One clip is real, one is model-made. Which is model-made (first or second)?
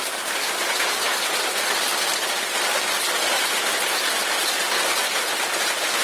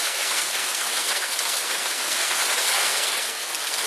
second